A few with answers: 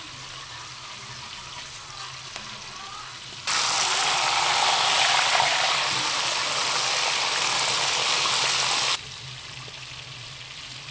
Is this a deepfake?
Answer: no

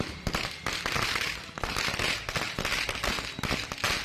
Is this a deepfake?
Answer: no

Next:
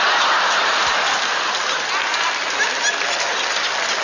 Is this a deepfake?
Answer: no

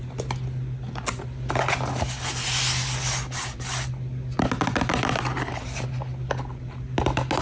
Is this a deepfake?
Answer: no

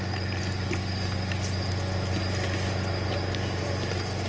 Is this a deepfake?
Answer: no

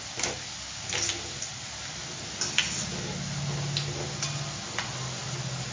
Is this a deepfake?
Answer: no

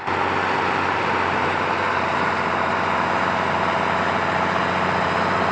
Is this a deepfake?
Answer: no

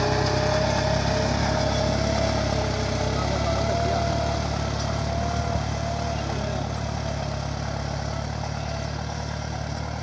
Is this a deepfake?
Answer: no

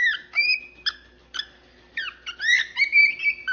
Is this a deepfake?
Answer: no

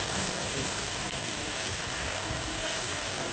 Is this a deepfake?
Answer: yes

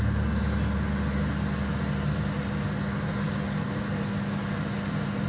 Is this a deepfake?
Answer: no